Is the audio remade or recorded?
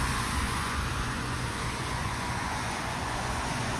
remade